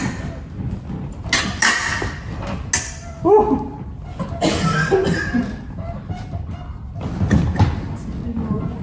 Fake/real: real